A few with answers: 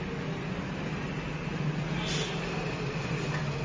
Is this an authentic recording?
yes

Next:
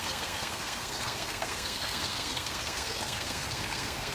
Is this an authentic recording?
no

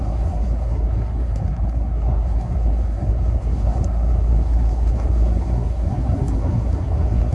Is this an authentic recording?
no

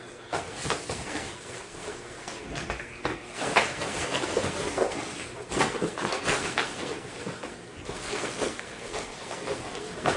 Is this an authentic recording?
no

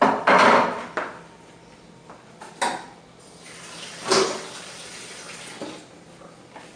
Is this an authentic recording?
yes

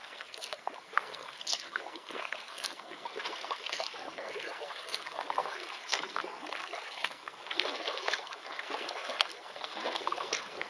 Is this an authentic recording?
no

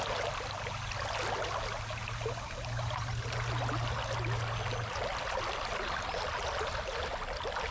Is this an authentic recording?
yes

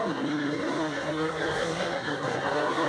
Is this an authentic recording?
no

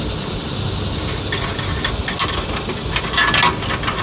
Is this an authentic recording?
yes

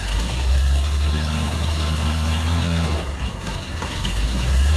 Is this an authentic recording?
no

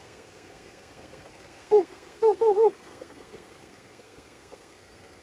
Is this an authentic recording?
no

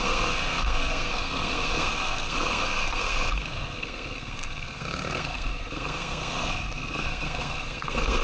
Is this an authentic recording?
no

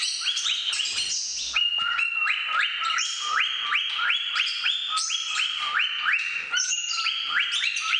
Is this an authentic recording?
yes